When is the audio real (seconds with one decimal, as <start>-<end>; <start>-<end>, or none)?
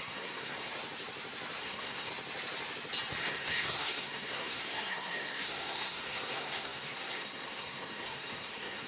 0.7-1.6; 2.1-3.2